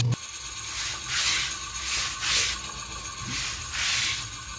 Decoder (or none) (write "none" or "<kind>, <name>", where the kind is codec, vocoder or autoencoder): none